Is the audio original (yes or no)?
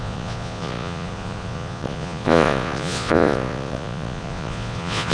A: no